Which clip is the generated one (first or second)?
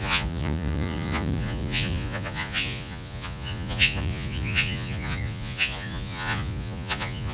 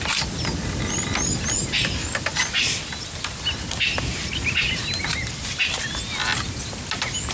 first